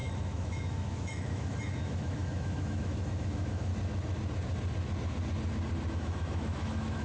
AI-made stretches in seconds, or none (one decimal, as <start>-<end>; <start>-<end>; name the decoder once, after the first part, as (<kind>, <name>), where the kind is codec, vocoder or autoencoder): 0.0-3.7 (autoencoder, DAC-VAE); 5.9-7.0